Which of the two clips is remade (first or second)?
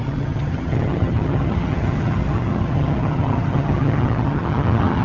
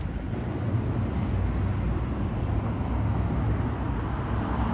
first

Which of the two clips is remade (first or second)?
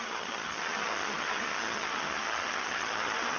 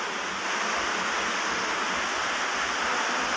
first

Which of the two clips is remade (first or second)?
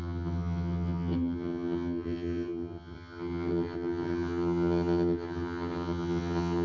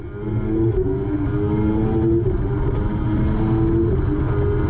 first